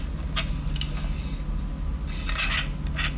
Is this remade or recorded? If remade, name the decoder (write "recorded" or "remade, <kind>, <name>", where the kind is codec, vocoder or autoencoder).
recorded